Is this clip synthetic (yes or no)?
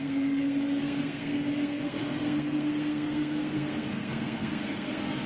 yes